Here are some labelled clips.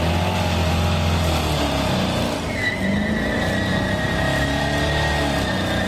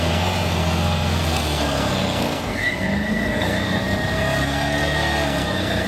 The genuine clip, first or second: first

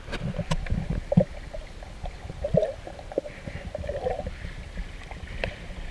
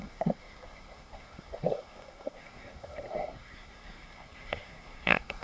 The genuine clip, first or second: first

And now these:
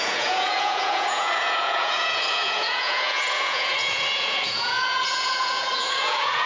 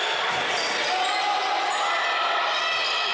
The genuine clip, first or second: second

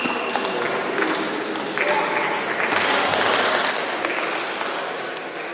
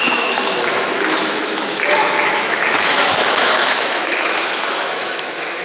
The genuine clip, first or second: first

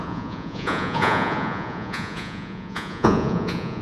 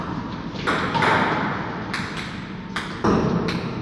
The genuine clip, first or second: second